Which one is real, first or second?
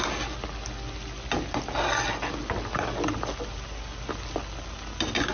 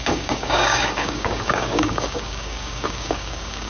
first